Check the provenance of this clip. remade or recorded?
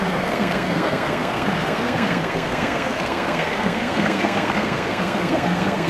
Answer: remade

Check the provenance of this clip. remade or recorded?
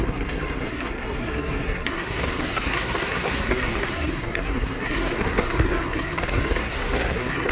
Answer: remade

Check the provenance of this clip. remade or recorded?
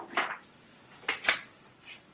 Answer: recorded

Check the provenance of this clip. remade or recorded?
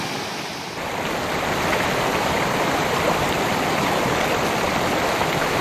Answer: recorded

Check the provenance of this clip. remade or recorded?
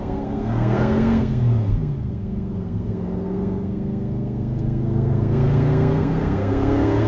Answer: remade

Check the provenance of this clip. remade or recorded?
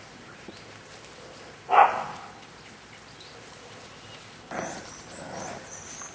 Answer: recorded